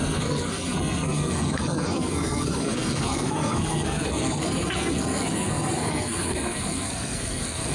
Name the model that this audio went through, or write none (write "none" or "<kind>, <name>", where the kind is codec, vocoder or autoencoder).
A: codec, SNAC